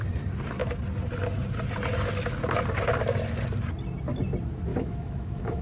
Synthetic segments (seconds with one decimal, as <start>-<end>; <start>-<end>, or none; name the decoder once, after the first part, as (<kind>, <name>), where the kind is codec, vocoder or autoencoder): 4.7-5.6 (autoencoder, DAC-VAE)